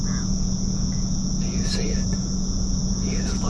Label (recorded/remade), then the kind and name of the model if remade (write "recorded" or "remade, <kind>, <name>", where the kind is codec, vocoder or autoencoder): remade, vocoder, Vocos